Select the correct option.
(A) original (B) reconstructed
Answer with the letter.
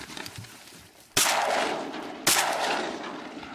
A